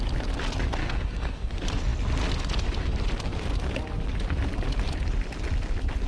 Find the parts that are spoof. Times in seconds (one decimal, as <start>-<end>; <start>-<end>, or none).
0.8-1.5

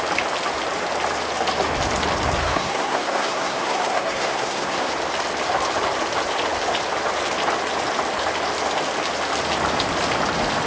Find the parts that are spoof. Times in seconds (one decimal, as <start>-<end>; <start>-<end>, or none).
2.4-4.9

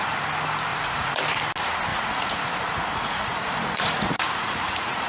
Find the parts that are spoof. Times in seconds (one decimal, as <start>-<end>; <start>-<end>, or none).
0.7-1.2; 1.9-5.1

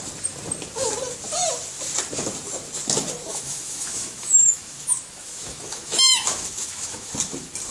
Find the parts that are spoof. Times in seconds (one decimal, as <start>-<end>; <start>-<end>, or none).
3.3-7.1

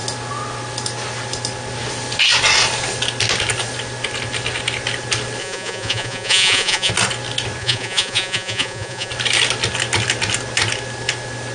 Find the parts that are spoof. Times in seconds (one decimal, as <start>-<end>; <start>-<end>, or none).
5.4-6.9; 7.6-9.1